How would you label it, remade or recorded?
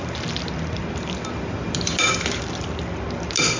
recorded